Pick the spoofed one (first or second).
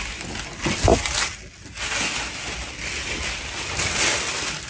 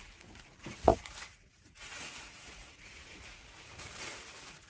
second